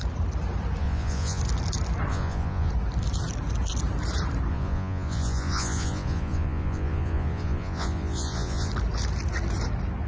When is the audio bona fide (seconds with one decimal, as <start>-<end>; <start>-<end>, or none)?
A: 0.0-0.8; 1.4-2.1; 2.7-4.5; 8.7-10.1